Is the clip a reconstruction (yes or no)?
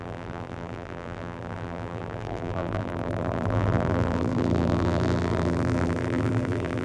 yes